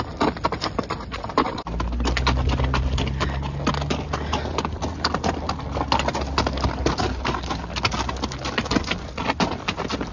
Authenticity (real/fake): real